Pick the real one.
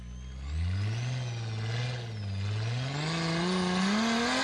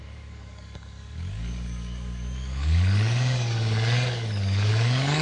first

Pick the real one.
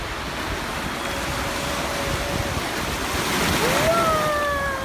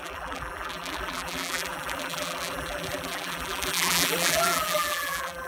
first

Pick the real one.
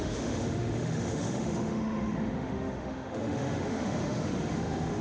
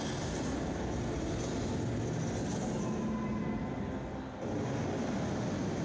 second